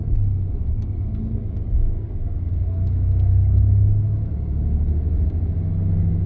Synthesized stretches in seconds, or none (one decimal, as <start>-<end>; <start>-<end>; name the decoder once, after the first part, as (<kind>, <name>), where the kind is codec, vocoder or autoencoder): 1.8-3.6 (codec, SNAC)